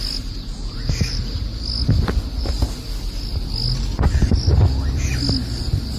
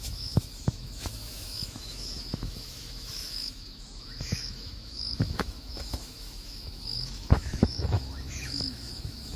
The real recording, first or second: first